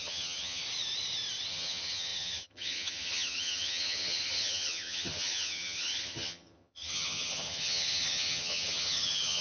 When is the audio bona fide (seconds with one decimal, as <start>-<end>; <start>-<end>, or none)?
0.6-1.5